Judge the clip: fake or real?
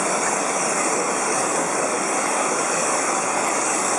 fake